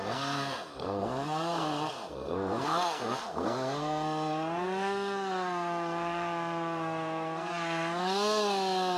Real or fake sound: fake